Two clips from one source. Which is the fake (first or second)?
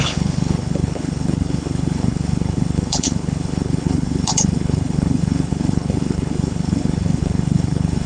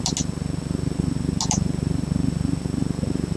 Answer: first